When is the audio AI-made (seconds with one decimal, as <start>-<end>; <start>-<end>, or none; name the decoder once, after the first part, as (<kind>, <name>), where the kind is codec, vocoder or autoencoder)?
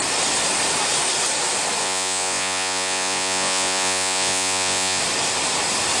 1.8-5.0 (vocoder, Vocos)